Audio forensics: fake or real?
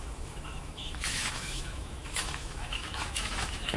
fake